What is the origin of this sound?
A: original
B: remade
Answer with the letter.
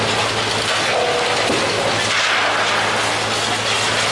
A